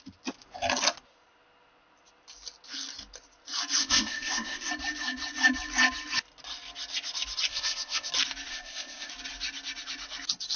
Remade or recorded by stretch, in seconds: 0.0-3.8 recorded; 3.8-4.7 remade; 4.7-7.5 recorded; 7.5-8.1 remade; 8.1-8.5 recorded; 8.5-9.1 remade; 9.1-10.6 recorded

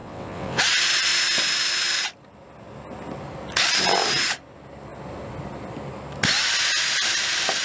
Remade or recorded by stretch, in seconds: 0.0-0.6 remade; 0.6-7.6 recorded

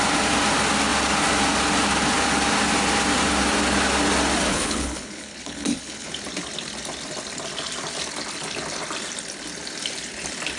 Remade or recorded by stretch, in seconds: 0.0-4.5 recorded; 4.5-6.1 remade; 6.1-10.6 recorded

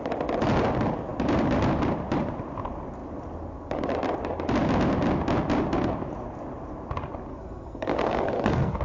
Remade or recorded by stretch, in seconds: 0.0-7.3 recorded; 7.3-8.8 remade

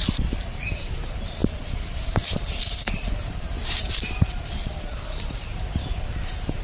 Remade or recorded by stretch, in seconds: 0.0-5.5 remade; 5.5-6.1 recorded; 6.1-6.6 remade

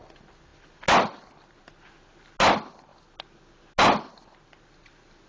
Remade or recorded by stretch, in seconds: 0.0-5.3 recorded

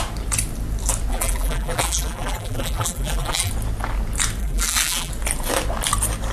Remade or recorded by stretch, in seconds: 0.0-1.1 recorded; 1.1-3.5 remade; 3.5-4.4 recorded; 4.4-5.1 remade; 5.1-6.3 recorded